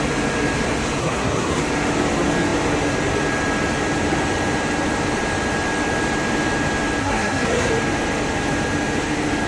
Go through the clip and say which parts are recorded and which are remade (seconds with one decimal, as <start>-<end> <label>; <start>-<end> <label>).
0.0-1.0 recorded; 1.0-1.6 remade; 1.6-7.0 recorded; 7.0-7.7 remade; 7.7-9.5 recorded